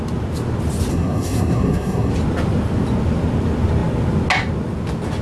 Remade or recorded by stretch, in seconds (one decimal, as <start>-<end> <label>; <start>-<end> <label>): 0.0-0.9 recorded; 0.9-2.1 remade; 2.1-5.2 recorded